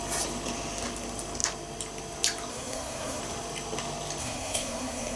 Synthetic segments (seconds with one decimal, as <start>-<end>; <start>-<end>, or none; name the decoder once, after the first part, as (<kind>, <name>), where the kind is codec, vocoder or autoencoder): 2.5-3.2 (codec, SNAC); 4.2-5.2